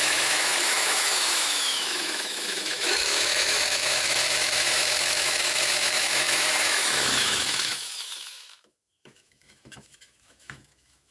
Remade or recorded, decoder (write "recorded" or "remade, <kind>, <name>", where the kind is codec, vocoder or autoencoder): remade, autoencoder, DAC-VAE